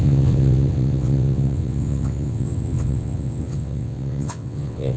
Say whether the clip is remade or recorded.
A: remade